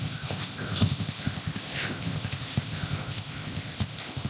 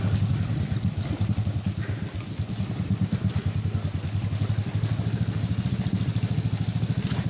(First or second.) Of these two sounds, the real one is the second